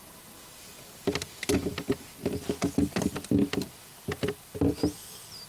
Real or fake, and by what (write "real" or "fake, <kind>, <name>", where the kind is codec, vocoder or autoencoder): real